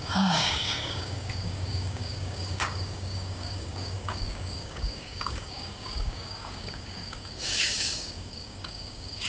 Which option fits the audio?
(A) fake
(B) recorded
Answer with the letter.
A